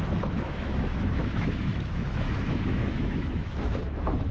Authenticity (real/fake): fake